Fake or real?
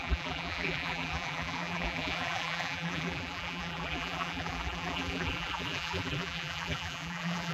fake